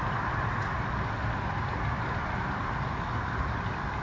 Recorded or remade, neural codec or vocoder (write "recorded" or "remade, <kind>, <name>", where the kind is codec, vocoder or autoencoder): recorded